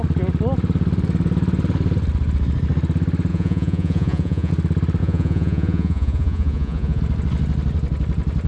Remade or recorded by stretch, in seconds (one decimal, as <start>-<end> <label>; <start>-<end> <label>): 0.0-3.3 recorded; 3.3-4.5 remade; 4.5-5.0 recorded; 5.0-7.0 remade; 7.0-8.5 recorded